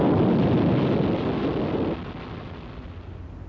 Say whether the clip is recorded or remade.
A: recorded